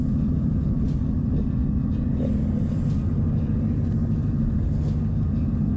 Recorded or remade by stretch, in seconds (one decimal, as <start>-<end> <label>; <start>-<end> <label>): 0.0-5.8 recorded